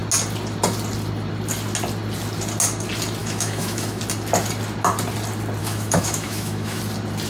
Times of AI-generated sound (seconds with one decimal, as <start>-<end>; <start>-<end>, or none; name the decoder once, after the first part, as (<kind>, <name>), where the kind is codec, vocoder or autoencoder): 3.2-4.0 (autoencoder, DAC-VAE); 5.6-6.8